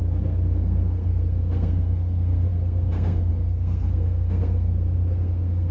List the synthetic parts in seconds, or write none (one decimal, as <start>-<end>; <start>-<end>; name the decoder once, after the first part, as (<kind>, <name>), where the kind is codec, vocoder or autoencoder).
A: 0.0-5.7 (codec, SNAC)